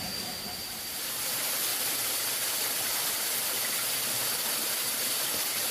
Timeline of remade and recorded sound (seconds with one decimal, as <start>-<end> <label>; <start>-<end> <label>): 0.0-5.7 recorded